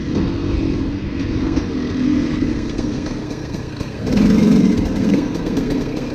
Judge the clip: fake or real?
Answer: fake